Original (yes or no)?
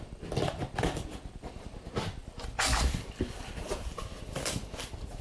yes